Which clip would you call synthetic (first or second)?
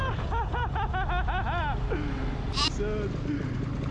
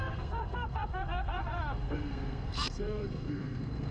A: second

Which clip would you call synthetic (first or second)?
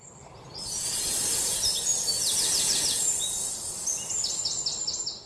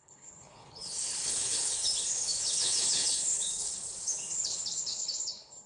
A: second